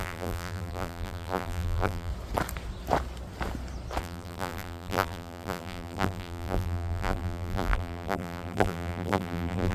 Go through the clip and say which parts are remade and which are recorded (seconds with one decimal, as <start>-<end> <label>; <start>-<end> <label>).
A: 0.0-2.1 remade; 2.1-4.0 recorded; 4.0-9.7 remade